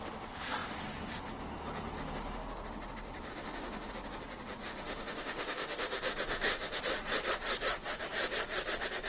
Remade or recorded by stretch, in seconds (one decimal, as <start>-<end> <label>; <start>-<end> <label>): 0.0-3.3 recorded; 3.3-3.9 remade; 3.9-4.7 recorded; 4.7-6.8 remade; 6.8-9.1 recorded